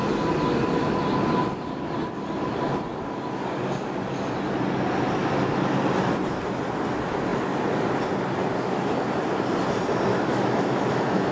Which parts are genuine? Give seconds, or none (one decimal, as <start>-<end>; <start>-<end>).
0.0-10.1